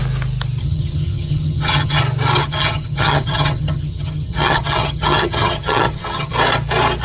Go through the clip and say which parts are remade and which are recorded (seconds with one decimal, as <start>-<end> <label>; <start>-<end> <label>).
0.0-0.6 recorded; 0.6-2.0 remade; 2.0-2.4 recorded; 2.4-6.3 remade; 6.3-7.0 recorded